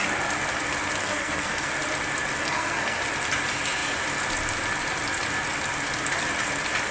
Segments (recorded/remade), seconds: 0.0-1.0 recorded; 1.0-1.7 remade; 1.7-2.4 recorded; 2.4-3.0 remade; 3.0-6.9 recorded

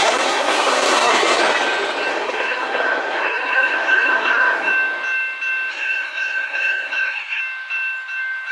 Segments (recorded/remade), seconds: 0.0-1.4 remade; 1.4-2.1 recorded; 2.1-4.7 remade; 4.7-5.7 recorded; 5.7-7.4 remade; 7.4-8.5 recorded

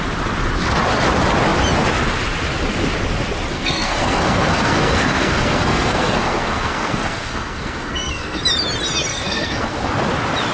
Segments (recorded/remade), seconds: 0.0-3.5 recorded; 3.5-8.4 remade; 8.4-9.1 recorded; 9.1-9.8 remade; 9.8-10.5 recorded

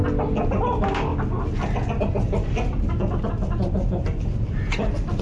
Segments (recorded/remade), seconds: 0.0-5.2 recorded

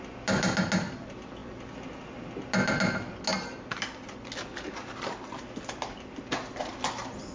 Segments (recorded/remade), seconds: 0.0-7.3 recorded

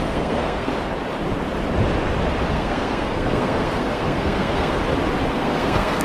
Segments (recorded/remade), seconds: 0.0-0.7 remade; 0.7-2.5 recorded; 2.5-4.8 remade; 4.8-5.3 recorded; 5.3-6.0 remade

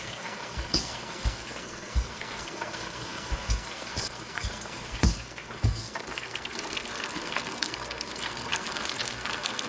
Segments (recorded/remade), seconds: 0.0-9.7 remade

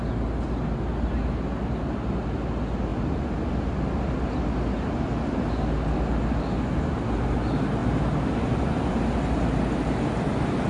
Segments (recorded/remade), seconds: 0.0-10.7 recorded